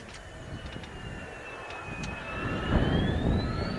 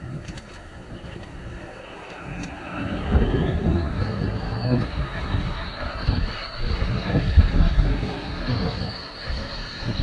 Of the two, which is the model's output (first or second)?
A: second